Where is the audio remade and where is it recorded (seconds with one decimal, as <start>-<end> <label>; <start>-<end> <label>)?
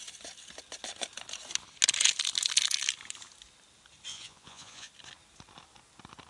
0.0-4.1 recorded; 4.1-4.9 remade; 4.9-6.3 recorded